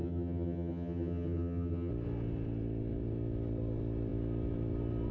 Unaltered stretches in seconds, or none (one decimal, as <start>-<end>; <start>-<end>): 1.9-5.1